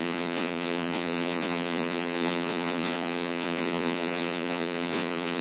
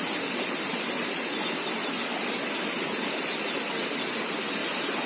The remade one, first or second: first